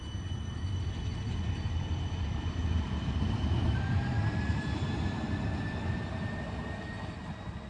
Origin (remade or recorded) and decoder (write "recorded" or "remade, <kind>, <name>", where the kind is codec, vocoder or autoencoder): recorded